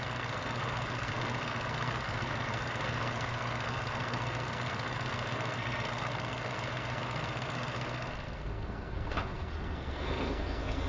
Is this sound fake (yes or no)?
yes